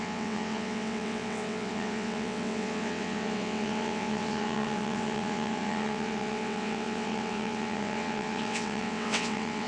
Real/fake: fake